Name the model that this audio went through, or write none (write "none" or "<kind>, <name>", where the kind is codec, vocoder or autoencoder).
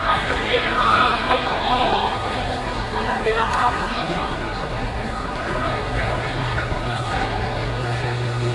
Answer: codec, SNAC